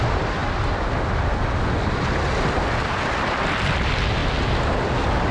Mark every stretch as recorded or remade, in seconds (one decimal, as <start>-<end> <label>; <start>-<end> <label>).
0.0-5.3 recorded